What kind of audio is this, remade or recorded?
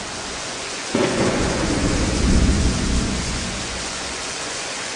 remade